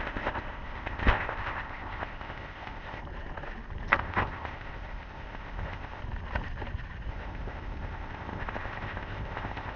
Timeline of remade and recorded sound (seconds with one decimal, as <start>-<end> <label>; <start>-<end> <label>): 0.0-3.0 remade; 3.0-4.0 recorded; 4.0-6.0 remade; 6.0-7.1 recorded; 7.1-9.8 remade